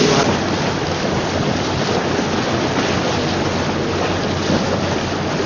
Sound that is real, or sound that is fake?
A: real